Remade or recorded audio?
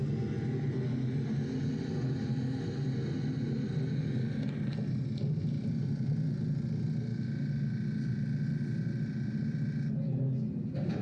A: recorded